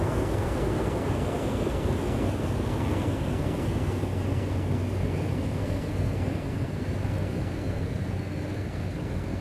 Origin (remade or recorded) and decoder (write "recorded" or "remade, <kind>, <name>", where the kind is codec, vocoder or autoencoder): remade, codec, SNAC